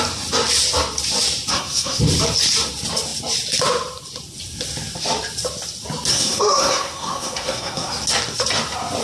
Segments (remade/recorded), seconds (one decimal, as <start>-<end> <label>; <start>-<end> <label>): 0.0-1.5 recorded; 1.5-2.0 remade; 2.0-6.1 recorded; 6.1-7.9 remade; 7.9-9.0 recorded